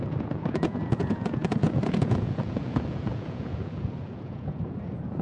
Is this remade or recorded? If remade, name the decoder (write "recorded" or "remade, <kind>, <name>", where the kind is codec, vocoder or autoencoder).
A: remade, vocoder, Vocos